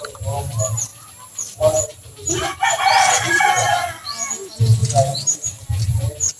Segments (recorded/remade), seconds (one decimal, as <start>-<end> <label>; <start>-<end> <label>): 0.0-0.9 recorded; 0.9-3.4 remade; 3.4-6.4 recorded